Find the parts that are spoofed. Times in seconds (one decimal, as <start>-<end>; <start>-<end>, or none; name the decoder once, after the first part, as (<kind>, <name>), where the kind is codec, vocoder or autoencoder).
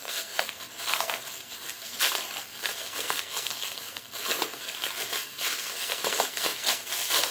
0.0-7.3 (codec, SNAC)